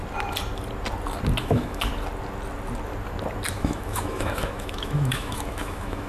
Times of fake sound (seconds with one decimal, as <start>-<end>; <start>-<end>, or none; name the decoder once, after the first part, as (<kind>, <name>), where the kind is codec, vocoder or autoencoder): 1.4-1.9 (autoencoder, DAC-VAE); 3.5-6.1